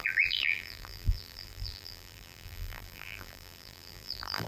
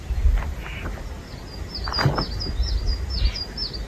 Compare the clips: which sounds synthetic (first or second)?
first